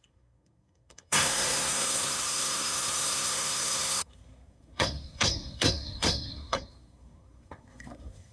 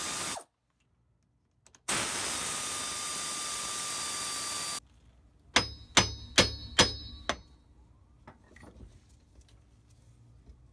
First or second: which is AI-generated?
first